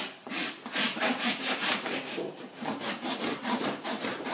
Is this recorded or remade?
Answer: remade